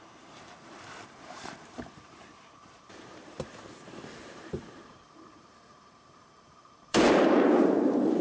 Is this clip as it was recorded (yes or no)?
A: no